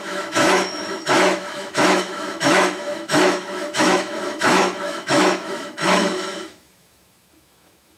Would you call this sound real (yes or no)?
no